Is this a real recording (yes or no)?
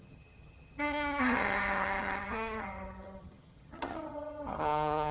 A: no